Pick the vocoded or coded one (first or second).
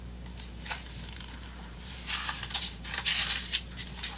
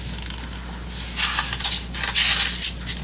first